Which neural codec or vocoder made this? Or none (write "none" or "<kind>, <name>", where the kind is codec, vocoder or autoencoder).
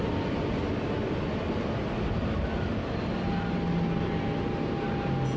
none